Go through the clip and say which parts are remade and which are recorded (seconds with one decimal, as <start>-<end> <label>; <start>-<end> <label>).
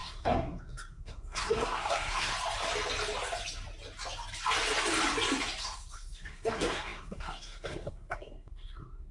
0.0-2.3 remade; 2.3-5.6 recorded; 5.6-9.1 remade